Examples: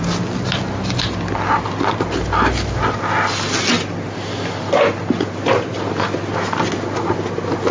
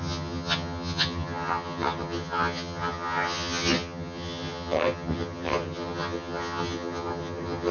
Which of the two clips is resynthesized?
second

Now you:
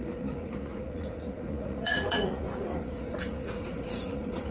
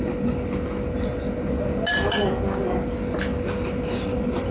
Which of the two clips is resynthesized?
first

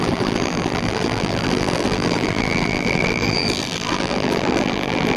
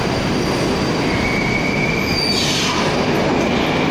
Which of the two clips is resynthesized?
first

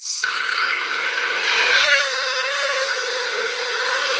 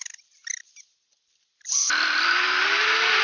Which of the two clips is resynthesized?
first